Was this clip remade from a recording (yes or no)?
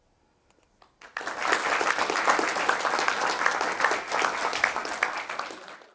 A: no